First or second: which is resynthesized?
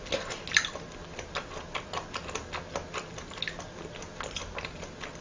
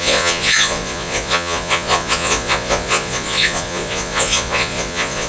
second